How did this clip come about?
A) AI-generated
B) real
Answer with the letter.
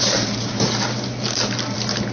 A